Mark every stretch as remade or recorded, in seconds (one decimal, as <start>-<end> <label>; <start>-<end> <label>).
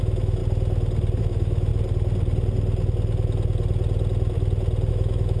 0.0-0.4 remade; 0.4-1.2 recorded; 1.2-1.7 remade; 1.7-4.9 recorded; 4.9-5.4 remade